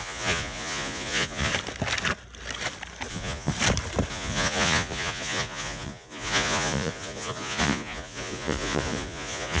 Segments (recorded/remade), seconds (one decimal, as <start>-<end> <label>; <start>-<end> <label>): 0.0-1.5 remade; 1.5-3.1 recorded; 3.1-3.5 remade; 3.5-4.1 recorded; 4.1-9.6 remade